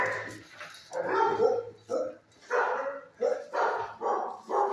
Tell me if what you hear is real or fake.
real